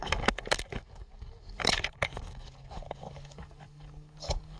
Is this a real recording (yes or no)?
no